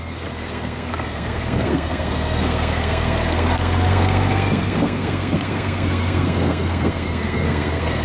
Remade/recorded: remade